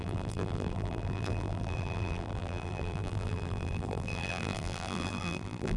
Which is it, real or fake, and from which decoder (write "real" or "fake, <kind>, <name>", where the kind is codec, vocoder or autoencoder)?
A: fake, vocoder, BigVGAN v2